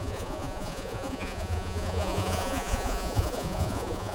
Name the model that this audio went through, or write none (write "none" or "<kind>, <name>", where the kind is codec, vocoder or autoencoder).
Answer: vocoder, Vocos